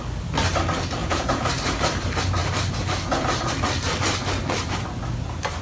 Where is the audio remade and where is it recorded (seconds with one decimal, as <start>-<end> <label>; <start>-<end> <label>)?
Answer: 0.0-1.0 recorded; 1.0-1.5 remade; 1.5-5.6 recorded

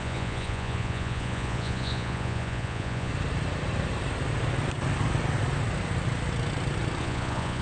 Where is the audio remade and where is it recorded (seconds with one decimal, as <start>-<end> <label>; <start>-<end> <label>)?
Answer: 0.0-3.1 remade; 3.1-7.0 recorded; 7.0-7.6 remade

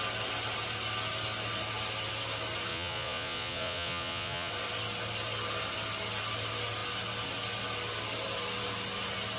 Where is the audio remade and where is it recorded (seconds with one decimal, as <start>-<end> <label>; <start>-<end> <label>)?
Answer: 0.0-2.7 recorded; 2.7-4.5 remade; 4.5-9.4 recorded

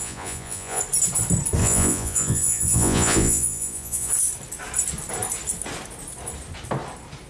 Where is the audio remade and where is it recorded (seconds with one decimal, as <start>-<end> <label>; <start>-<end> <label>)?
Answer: 0.0-0.8 remade; 0.8-1.6 recorded; 1.6-4.1 remade; 4.1-7.3 recorded

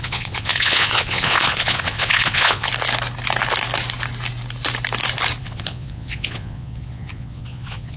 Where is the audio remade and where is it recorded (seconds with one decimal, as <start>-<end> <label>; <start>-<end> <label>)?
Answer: 0.0-2.7 remade; 2.7-5.4 recorded; 5.4-8.0 remade

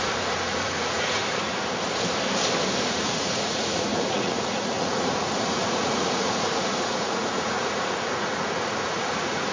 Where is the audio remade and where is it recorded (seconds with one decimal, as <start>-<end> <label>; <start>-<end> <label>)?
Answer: 0.0-1.2 remade; 1.2-2.9 recorded; 2.9-9.5 remade

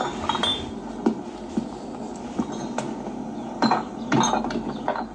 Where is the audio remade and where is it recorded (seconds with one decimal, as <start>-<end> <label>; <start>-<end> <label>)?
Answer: 0.0-5.1 recorded